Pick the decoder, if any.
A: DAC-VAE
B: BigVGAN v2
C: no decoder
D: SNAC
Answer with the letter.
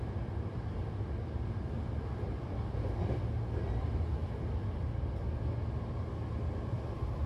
C